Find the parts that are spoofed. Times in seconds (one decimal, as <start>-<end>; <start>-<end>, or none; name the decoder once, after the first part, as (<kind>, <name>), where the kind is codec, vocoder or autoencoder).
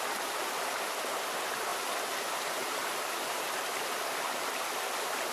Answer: none